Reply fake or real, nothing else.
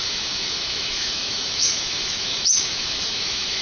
fake